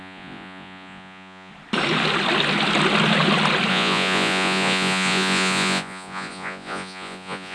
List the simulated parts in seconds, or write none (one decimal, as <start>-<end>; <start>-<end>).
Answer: 0.0-1.5; 3.7-7.5